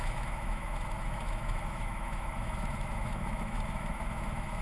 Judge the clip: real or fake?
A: fake